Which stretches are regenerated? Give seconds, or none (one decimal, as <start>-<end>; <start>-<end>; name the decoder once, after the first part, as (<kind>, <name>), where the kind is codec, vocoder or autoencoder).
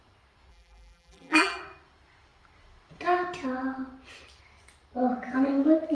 0.5-1.6 (vocoder, BigVGAN v2)